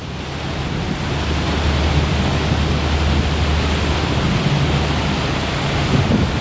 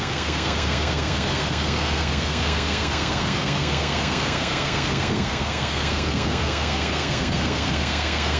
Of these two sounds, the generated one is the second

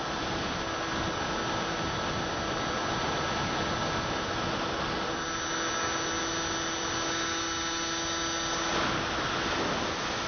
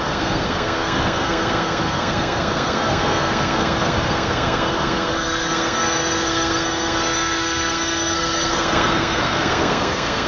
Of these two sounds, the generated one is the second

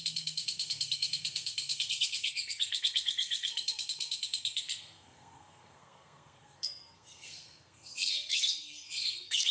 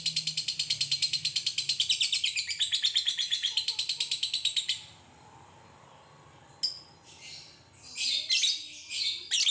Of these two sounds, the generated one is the first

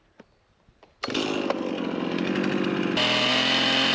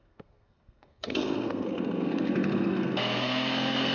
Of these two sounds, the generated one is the second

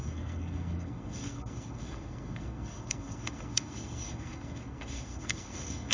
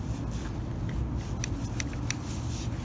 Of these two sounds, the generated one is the first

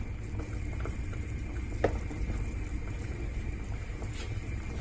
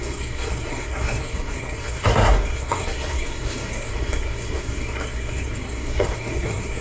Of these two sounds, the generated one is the second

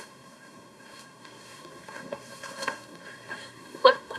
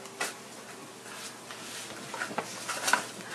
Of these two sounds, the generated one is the first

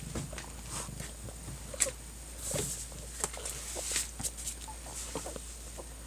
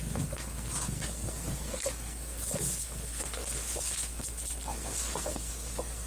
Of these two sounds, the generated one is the second